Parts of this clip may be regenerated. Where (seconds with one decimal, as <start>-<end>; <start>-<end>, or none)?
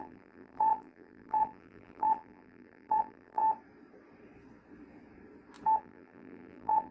0.0-3.4; 5.8-6.9